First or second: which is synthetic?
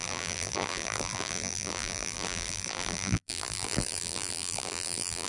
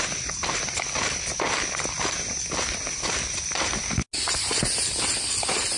first